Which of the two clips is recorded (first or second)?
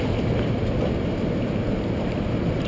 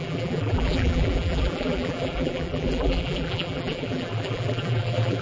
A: first